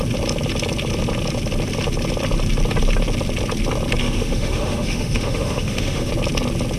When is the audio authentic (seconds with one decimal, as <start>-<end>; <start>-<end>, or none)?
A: 0.0-4.0; 6.1-6.8